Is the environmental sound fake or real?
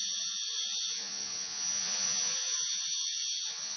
fake